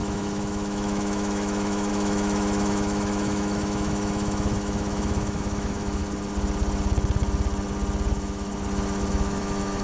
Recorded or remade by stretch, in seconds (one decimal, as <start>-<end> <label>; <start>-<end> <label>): 0.0-6.0 remade; 6.0-8.1 recorded; 8.1-8.5 remade; 8.5-9.1 recorded; 9.1-9.8 remade